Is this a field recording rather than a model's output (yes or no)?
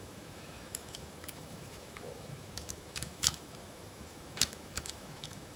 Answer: no